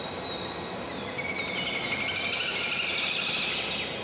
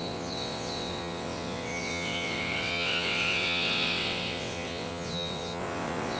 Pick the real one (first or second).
first